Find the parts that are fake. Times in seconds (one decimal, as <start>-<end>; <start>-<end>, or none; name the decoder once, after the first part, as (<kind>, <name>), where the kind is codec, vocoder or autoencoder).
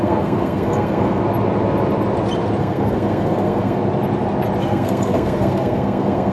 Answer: 0.0-1.2 (codec, SNAC); 2.6-3.8; 4.6-6.3